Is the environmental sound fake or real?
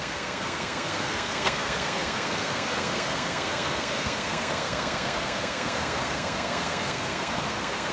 fake